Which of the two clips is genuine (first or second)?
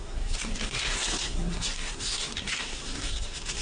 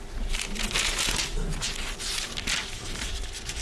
second